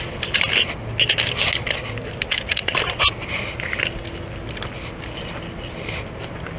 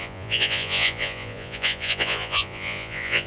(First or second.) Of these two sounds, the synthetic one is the second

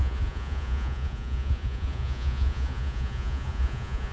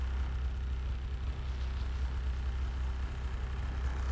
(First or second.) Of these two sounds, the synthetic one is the first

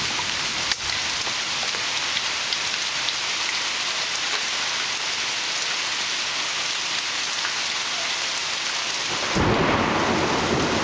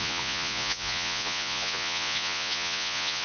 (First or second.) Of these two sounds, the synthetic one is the second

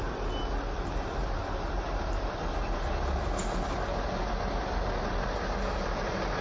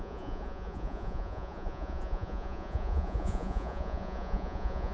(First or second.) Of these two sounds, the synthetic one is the second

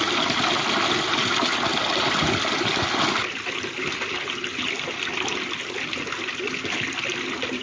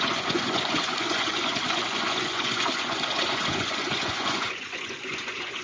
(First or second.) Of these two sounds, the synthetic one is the second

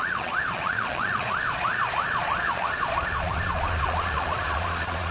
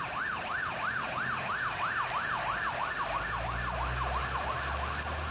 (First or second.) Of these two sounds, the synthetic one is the first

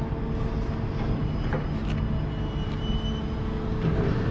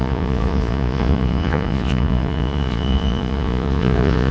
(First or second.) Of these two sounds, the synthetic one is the second